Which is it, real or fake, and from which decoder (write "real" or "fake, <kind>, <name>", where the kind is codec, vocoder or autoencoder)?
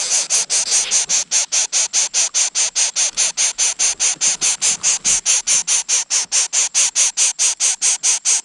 real